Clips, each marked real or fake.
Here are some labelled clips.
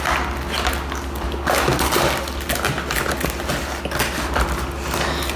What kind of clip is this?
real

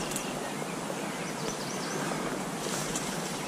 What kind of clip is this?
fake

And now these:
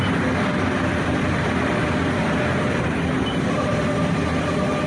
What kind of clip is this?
real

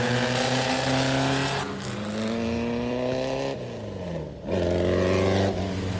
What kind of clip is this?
real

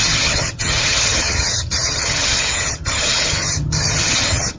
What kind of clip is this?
fake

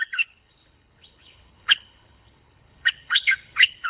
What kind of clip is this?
fake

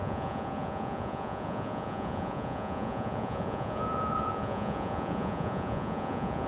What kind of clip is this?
fake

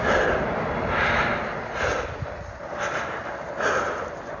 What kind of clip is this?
real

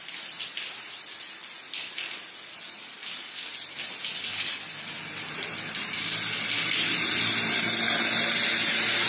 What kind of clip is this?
real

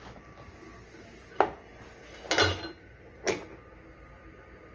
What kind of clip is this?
real